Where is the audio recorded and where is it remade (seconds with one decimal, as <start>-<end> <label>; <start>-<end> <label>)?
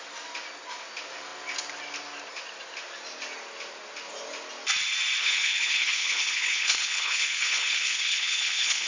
0.0-5.2 recorded; 5.2-8.9 remade